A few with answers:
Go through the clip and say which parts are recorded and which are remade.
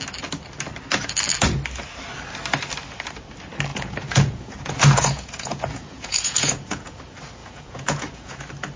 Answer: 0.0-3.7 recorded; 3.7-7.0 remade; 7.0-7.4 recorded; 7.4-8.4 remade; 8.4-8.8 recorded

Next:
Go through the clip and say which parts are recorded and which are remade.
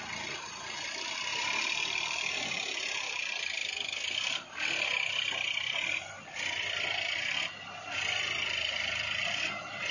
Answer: 0.0-9.9 recorded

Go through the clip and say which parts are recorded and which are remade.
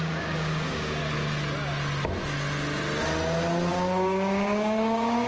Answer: 0.0-1.0 remade; 1.0-3.7 recorded; 3.7-5.3 remade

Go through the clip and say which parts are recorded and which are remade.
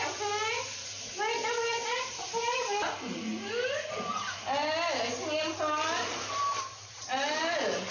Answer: 0.0-1.8 recorded; 1.8-2.9 remade; 2.9-7.9 recorded